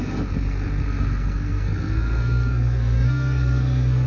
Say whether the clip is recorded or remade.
remade